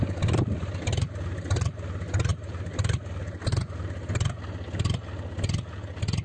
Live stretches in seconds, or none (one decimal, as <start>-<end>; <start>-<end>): 0.0-2.3; 3.0-6.2